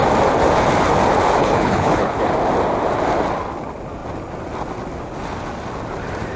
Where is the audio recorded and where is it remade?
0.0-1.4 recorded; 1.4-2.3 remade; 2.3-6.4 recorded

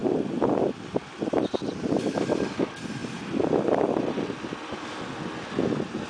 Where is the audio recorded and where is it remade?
0.0-6.1 recorded

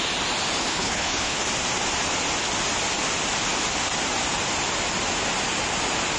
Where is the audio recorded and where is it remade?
0.0-0.7 recorded; 0.7-1.4 remade; 1.4-6.2 recorded

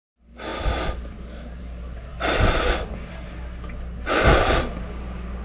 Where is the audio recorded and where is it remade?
0.0-5.4 recorded

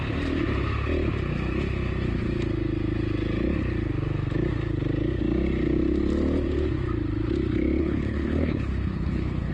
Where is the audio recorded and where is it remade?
0.0-7.8 recorded; 7.8-9.5 remade

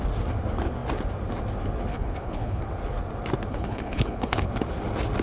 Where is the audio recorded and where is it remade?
0.0-1.9 recorded; 1.9-2.6 remade; 2.6-3.5 recorded; 3.5-4.5 remade; 4.5-5.2 recorded

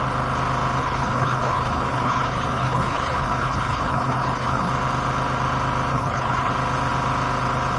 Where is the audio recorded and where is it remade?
0.0-0.8 recorded; 0.8-4.7 remade; 4.7-5.9 recorded; 5.9-6.5 remade; 6.5-7.8 recorded